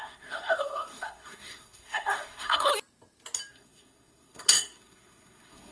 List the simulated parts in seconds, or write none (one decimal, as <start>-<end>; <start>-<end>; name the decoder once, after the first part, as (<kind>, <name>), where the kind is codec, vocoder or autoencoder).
0.0-2.7 (codec, SNAC); 3.5-5.7